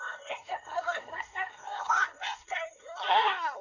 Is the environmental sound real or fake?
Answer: fake